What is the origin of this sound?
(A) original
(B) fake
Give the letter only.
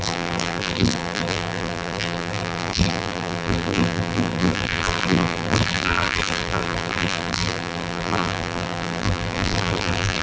B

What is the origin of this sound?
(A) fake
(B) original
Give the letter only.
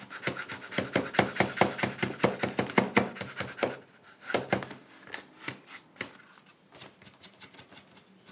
B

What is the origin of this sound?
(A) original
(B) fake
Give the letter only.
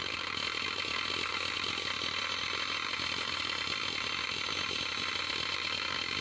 A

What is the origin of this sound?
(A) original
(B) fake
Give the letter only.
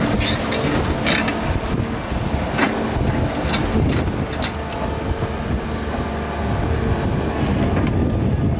A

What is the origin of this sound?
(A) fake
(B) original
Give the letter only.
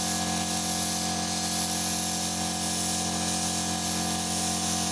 B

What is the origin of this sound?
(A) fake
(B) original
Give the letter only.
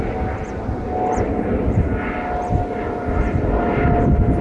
B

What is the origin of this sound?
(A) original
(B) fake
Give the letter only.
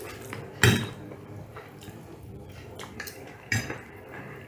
B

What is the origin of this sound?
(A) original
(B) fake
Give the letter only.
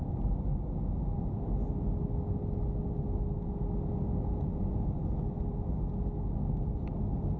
A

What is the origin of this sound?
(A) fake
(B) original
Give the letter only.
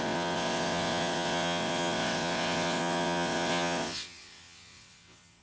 A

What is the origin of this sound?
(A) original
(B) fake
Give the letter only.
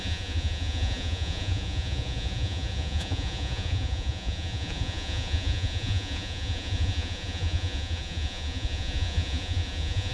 B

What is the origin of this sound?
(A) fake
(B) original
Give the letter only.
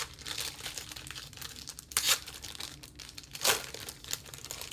B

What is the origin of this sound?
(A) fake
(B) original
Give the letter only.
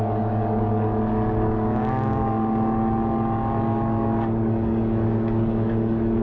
A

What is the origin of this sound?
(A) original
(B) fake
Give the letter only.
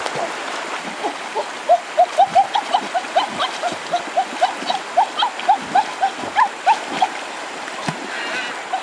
A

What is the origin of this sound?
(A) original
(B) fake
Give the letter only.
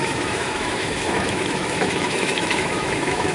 B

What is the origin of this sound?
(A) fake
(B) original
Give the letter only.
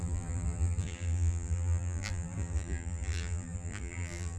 A